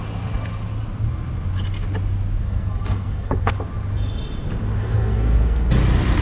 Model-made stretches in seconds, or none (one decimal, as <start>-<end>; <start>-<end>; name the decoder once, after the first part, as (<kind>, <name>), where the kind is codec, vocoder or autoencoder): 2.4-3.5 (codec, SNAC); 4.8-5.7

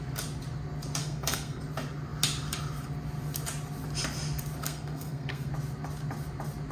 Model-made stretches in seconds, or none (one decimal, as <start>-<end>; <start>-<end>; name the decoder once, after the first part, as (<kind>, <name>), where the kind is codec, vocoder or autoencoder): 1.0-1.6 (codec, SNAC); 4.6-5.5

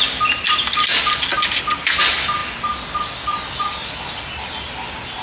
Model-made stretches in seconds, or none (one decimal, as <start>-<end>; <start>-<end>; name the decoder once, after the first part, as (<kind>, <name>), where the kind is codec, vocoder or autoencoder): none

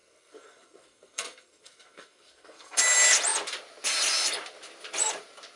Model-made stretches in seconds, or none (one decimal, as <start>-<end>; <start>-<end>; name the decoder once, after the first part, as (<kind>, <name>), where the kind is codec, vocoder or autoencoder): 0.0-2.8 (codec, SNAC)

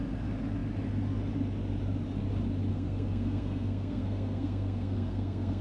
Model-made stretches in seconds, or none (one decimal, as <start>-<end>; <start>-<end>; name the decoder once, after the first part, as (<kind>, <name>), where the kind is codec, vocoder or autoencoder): 2.7-5.6 (codec, SNAC)

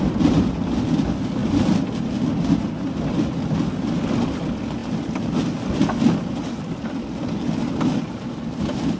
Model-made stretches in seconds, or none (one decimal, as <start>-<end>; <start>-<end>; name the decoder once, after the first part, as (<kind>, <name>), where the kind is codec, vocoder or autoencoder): none

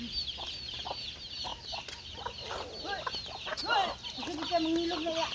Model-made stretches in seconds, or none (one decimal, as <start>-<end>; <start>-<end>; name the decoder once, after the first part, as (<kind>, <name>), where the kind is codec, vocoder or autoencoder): none

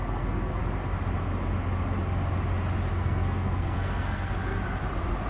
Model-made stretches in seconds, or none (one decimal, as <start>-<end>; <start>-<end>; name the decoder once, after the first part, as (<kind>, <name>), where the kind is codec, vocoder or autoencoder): 0.0-0.6 (codec, SNAC); 2.9-4.6